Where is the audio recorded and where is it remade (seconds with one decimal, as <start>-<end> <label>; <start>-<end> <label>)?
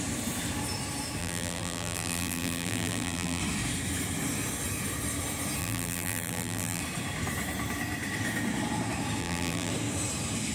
0.0-1.2 recorded; 1.2-3.4 remade; 3.4-5.6 recorded; 5.6-6.8 remade; 6.8-9.2 recorded; 9.2-9.7 remade; 9.7-10.5 recorded